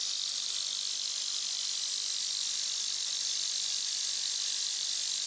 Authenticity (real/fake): real